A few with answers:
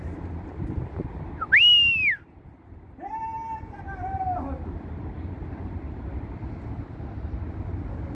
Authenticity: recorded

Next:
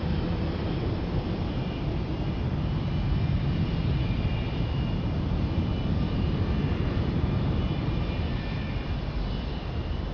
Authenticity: remade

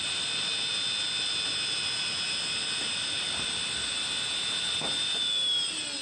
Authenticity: recorded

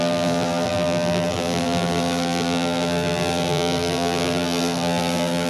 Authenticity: remade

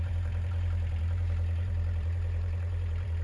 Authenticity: remade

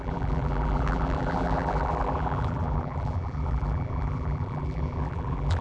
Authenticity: remade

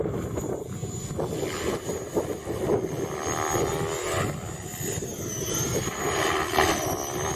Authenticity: recorded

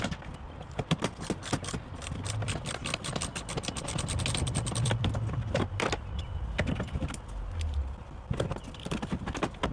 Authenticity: recorded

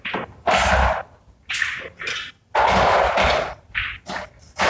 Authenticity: recorded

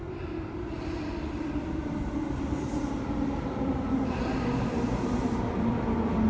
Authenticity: recorded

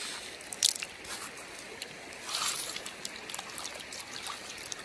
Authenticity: recorded